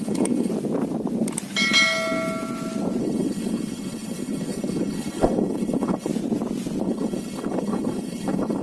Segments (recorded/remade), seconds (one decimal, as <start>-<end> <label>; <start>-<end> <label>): 0.0-0.5 remade; 0.5-3.0 recorded; 3.0-6.1 remade; 6.1-6.8 recorded; 6.8-8.6 remade